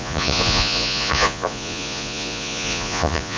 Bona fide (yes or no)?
no